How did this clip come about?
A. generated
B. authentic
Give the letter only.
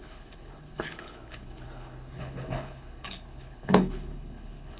A